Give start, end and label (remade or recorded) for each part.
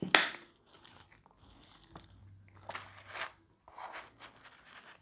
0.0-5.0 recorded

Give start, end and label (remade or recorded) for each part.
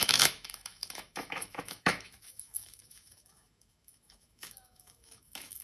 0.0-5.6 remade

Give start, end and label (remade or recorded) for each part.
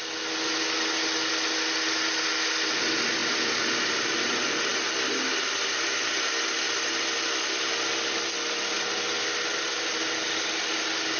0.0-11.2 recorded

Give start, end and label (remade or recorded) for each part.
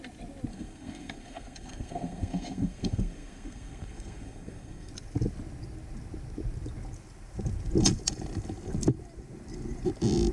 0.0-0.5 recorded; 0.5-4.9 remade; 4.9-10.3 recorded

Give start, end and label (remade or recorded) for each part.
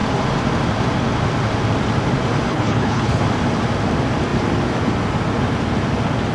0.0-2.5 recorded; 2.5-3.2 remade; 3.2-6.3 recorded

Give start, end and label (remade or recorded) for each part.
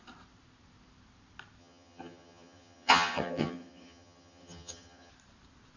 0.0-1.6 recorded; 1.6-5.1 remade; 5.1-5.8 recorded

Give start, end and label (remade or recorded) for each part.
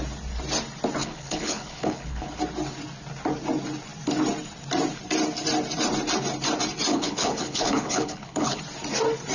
0.0-1.0 recorded; 1.0-2.4 remade; 2.4-6.9 recorded; 6.9-8.6 remade; 8.6-9.3 recorded